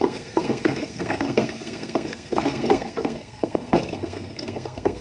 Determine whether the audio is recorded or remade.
remade